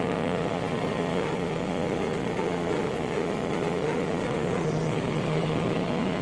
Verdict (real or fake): fake